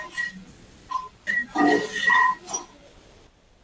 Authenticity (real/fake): real